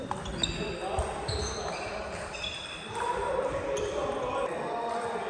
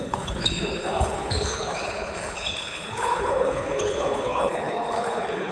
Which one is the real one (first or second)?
first